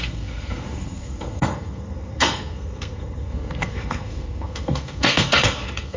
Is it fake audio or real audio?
fake